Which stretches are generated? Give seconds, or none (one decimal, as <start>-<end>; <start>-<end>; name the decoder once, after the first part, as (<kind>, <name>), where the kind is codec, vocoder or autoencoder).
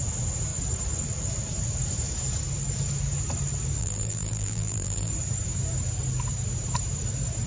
3.8-5.1 (vocoder, BigVGAN v2)